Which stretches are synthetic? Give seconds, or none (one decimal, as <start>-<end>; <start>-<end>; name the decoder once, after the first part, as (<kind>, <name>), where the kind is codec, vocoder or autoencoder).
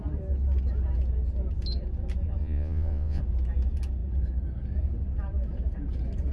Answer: 2.4-3.2 (vocoder, Vocos)